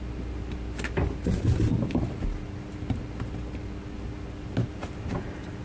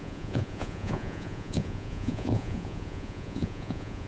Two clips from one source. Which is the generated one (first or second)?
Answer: second